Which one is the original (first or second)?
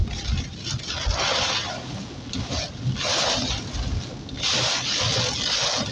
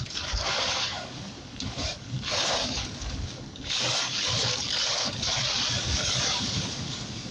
first